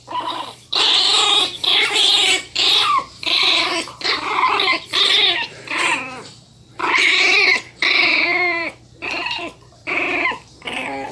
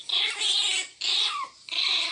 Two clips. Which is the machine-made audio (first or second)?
first